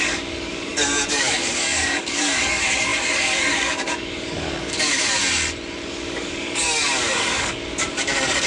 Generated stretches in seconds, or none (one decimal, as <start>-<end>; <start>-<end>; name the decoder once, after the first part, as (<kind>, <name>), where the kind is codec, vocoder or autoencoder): 0.0-5.0 (codec, DAC); 5.9-8.5